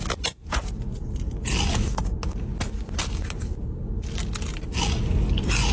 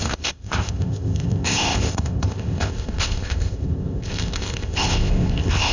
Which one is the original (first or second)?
first